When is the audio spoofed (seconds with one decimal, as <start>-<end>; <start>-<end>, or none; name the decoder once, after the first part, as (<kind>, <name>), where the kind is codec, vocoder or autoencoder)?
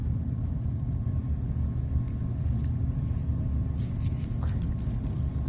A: none